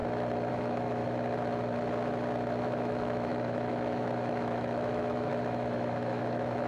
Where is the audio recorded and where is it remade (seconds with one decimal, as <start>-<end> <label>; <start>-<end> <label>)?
0.0-0.5 recorded; 0.5-1.0 remade; 1.0-2.6 recorded; 2.6-6.7 remade